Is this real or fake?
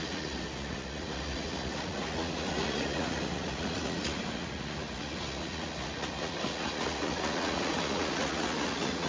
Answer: fake